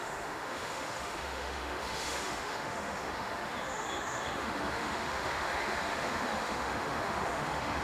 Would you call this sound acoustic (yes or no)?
no